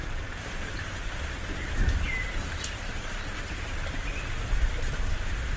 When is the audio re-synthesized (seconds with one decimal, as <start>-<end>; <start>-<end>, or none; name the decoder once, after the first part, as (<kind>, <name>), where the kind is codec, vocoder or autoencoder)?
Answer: 3.4-5.6 (vocoder, BigVGAN v2)